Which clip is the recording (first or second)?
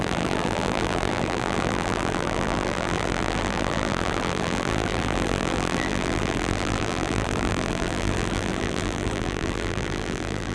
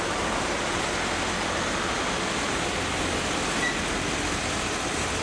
second